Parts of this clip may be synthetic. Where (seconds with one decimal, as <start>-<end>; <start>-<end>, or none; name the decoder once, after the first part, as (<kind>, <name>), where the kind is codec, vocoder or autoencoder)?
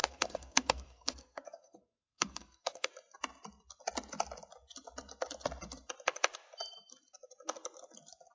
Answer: 0.0-2.9 (codec, SNAC)